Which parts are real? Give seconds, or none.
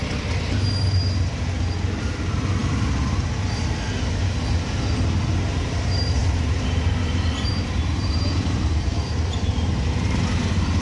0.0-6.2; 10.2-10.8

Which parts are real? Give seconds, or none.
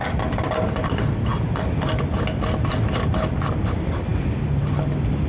0.0-5.3